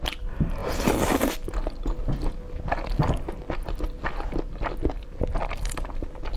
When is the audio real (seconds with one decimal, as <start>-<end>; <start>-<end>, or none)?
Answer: 0.0-6.4